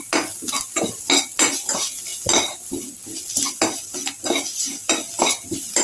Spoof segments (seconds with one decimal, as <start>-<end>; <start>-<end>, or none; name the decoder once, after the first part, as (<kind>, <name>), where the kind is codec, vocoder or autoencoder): none